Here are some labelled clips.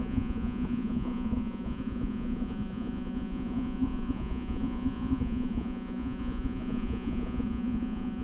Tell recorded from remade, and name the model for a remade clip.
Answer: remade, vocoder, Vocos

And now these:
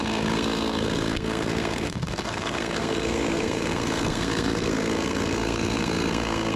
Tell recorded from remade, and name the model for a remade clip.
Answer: remade, codec, SNAC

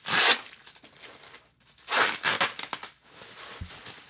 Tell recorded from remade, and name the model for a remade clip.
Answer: recorded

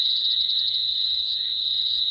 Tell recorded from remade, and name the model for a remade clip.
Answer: remade, vocoder, Vocos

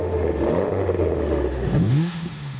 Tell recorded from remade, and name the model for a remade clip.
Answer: remade, autoencoder, DAC-VAE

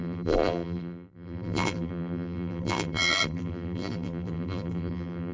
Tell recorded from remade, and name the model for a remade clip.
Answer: remade, vocoder, BigVGAN v2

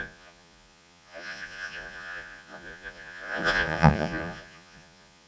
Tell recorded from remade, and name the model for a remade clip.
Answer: remade, vocoder, Vocos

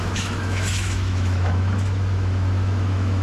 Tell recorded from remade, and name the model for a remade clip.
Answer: remade, autoencoder, DAC-VAE